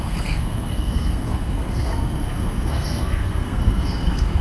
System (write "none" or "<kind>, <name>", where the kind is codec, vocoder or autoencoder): codec, SNAC